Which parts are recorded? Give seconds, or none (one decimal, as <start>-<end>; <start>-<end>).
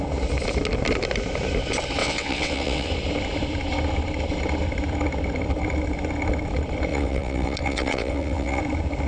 0.0-2.0; 2.9-6.9; 8.6-9.1